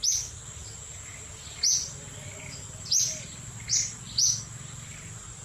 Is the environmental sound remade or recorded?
recorded